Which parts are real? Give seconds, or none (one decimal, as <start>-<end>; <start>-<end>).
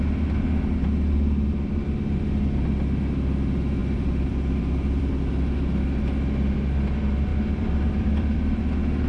0.0-3.8; 5.1-7.3; 8.6-9.1